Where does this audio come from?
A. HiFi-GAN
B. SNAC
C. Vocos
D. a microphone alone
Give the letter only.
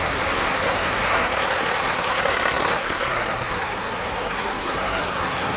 B